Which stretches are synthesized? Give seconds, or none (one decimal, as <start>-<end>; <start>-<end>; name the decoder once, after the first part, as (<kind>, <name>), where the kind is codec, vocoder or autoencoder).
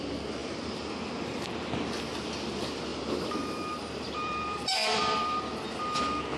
0.4-0.9 (vocoder, BigVGAN v2); 2.9-5.4